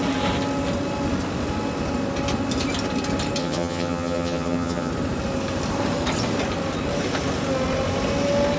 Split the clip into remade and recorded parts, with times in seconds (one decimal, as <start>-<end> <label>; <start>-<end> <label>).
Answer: 0.0-3.4 recorded; 3.4-4.9 remade; 4.9-8.6 recorded